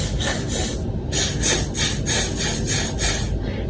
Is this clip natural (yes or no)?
yes